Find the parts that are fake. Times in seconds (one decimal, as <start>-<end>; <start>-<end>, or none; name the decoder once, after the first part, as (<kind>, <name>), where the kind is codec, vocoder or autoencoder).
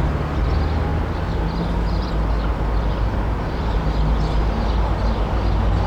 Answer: none